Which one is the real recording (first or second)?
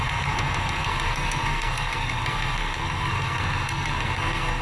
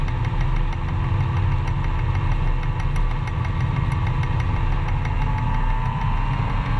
second